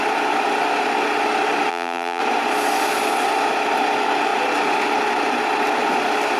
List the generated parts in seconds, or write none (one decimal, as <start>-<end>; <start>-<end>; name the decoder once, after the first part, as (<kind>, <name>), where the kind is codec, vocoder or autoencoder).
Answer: 1.7-2.2 (vocoder, BigVGAN v2)